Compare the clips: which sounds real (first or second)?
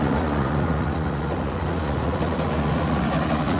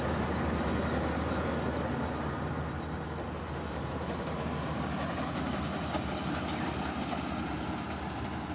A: second